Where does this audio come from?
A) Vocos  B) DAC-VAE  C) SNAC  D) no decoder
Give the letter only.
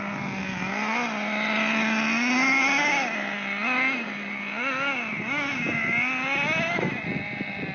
D